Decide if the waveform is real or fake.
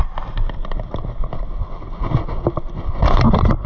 real